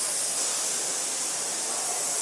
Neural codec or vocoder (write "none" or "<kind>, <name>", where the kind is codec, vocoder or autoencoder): none